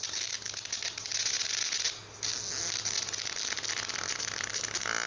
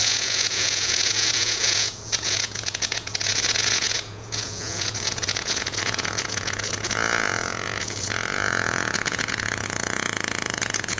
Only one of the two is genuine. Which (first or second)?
first